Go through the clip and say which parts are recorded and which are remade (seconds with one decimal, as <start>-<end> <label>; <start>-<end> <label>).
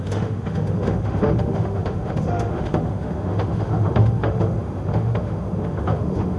0.0-6.4 remade